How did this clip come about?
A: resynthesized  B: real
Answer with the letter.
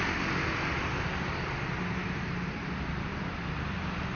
B